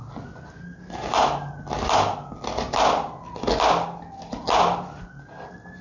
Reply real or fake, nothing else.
real